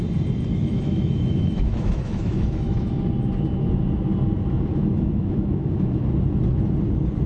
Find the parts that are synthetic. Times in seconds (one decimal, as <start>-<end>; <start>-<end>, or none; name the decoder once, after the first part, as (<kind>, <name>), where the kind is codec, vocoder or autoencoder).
0.5-3.0 (autoencoder, DAC-VAE); 4.7-6.0